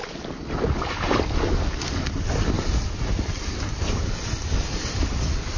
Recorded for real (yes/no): yes